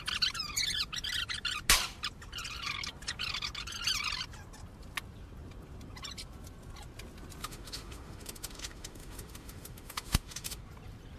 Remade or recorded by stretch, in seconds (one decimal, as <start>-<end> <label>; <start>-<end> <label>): 0.0-7.4 recorded; 7.4-10.6 remade; 10.6-11.2 recorded